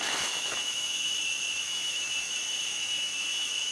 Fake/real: fake